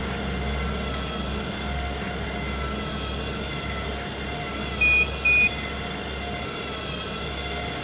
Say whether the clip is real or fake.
real